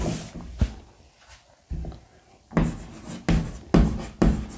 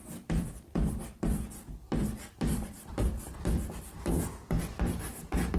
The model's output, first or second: second